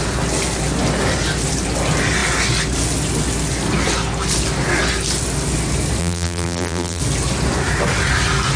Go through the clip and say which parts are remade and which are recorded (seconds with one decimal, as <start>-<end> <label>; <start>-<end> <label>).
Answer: 0.0-6.0 recorded; 6.0-7.0 remade; 7.0-8.6 recorded